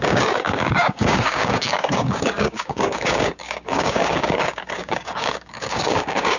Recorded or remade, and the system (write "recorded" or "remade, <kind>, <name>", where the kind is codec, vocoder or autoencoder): remade, codec, DAC